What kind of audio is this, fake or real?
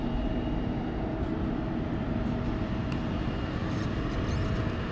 real